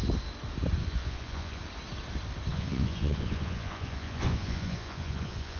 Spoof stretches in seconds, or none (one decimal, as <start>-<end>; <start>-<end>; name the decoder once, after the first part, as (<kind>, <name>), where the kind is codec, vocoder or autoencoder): 0.8-1.6 (vocoder, Vocos); 2.5-5.6